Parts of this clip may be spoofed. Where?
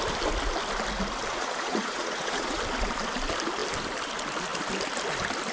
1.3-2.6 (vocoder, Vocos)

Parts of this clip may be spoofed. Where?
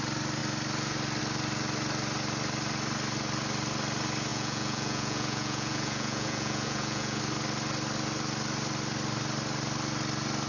4.3-7.2 (vocoder, Vocos)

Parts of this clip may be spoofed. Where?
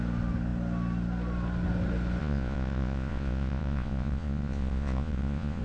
2.2-5.6 (vocoder, Vocos)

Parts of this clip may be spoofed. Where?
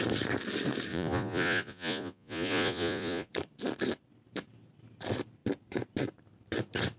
0.9-3.3 (vocoder, Vocos)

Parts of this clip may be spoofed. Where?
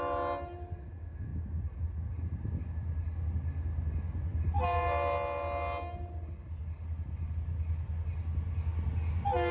none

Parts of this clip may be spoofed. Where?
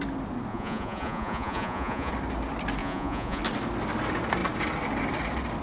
0.5-2.1 (vocoder, Vocos); 2.8-3.4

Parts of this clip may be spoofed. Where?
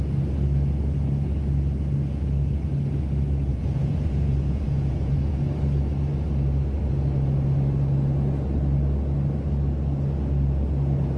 3.5-5.3 (vocoder, Vocos)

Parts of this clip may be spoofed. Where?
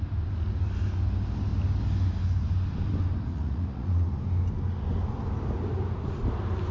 3.3-4.1 (vocoder, Vocos)